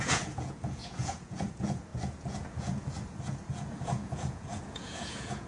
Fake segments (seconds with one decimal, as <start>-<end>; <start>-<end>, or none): 0.0-5.5